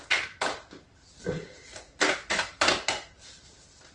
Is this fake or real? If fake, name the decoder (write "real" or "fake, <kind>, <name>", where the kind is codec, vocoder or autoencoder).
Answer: real